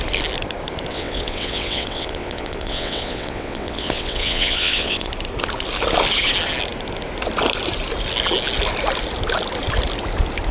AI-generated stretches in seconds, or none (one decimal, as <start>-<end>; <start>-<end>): 0.9-5.1